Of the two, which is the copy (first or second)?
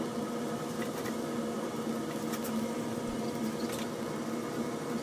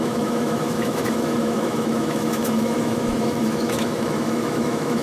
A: second